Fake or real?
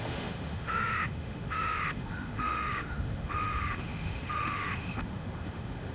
fake